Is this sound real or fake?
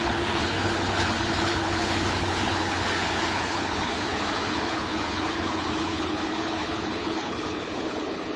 fake